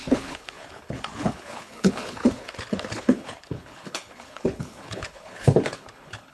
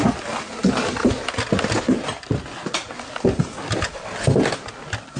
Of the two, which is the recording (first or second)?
second